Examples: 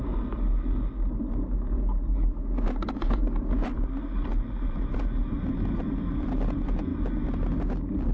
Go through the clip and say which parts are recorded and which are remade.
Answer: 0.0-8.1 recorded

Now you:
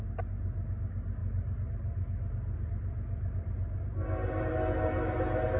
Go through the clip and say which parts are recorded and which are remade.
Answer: 0.0-5.6 recorded

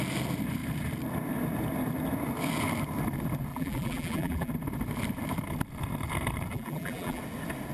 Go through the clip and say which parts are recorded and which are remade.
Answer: 0.0-3.5 recorded; 3.5-4.5 remade; 4.5-6.5 recorded; 6.5-7.2 remade; 7.2-7.7 recorded